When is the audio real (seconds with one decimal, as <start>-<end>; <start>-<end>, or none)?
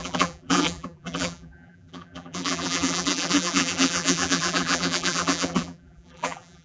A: none